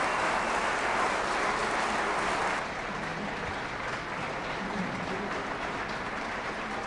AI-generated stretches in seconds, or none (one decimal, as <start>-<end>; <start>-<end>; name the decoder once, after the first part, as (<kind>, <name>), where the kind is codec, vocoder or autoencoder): 0.0-1.6 (vocoder, BigVGAN v2); 2.4-3.1; 6.0-6.9